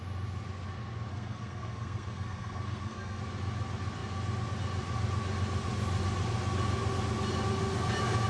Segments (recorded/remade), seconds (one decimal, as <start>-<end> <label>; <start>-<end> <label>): 0.0-1.1 recorded; 1.1-3.2 remade; 3.2-8.3 recorded